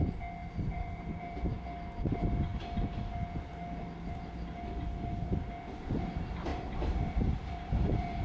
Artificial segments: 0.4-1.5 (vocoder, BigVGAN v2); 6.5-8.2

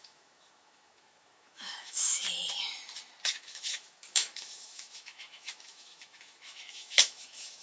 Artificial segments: 0.0-2.2 (autoencoder, DAC-VAE); 3.4-7.6

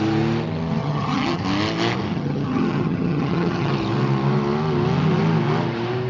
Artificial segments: 0.8-1.4 (vocoder, HiFi-GAN); 2.1-3.7

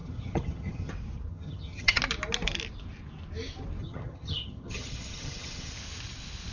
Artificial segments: 0.0-0.9 (vocoder, HiFi-GAN); 1.3-2.0; 3.8-5.7

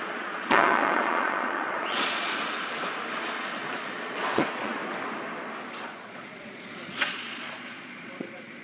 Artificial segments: 0.0-2.3 (vocoder, Vocos); 3.2-4.8; 5.7-8.6

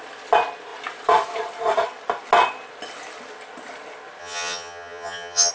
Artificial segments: 4.2-5.5 (vocoder, HiFi-GAN)

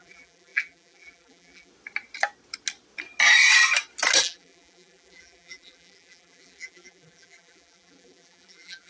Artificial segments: 0.0-1.7 (vocoder, BigVGAN v2); 4.2-8.9